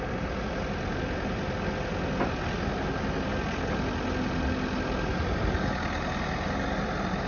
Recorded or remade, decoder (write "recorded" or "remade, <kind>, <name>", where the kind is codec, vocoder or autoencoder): recorded